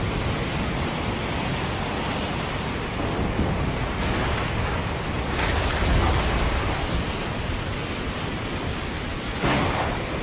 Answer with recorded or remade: recorded